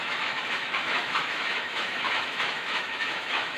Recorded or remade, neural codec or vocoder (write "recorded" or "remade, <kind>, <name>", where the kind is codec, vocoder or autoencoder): remade, autoencoder, DAC-VAE